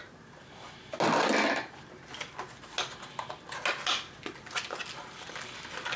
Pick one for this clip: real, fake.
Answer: real